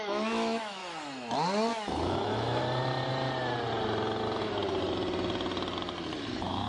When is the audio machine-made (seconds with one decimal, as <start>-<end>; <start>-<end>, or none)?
0.0-0.8; 1.7-2.6; 6.3-6.7